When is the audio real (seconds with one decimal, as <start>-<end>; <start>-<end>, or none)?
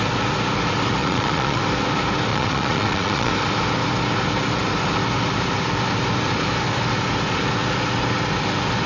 0.0-1.0; 1.6-2.3; 3.3-8.9